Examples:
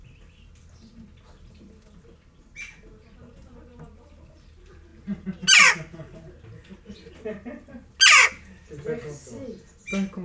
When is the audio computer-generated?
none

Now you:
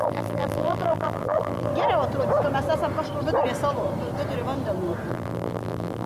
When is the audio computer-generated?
0.0-1.7 (vocoder, BigVGAN v2); 5.1-6.1

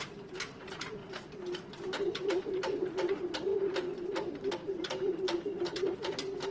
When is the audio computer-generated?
none